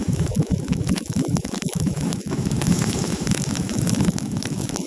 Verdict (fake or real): fake